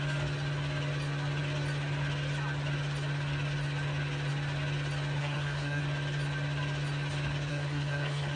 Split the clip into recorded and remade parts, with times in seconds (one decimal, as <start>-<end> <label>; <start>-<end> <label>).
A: 0.0-5.2 recorded; 5.2-5.8 remade; 5.8-7.5 recorded; 7.5-8.4 remade